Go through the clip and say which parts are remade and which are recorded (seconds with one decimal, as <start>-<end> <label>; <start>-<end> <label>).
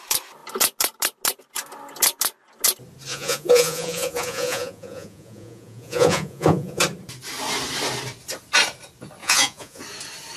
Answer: 0.0-3.1 recorded; 3.1-6.8 remade; 6.8-9.2 recorded; 9.2-9.8 remade; 9.8-10.4 recorded